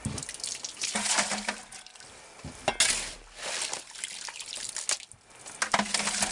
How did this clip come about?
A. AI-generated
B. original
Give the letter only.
B